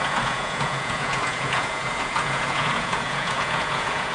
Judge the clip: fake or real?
fake